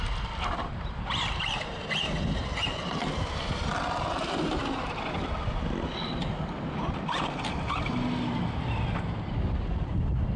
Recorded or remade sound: recorded